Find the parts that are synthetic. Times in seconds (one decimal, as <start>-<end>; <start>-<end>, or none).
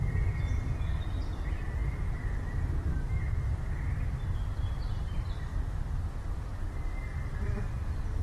none